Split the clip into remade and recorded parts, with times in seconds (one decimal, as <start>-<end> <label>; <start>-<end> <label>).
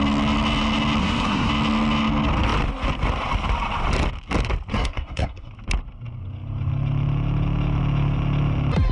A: 0.0-1.0 recorded; 1.0-1.5 remade; 1.5-4.7 recorded; 4.7-5.5 remade; 5.5-8.9 recorded